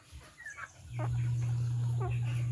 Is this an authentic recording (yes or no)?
yes